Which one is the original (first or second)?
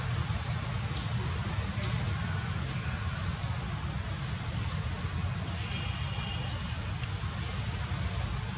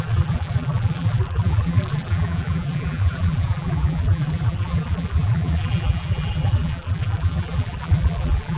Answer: first